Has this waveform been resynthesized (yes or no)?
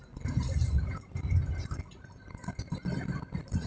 no